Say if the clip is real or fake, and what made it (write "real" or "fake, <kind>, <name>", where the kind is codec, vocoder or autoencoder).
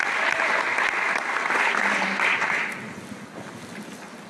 real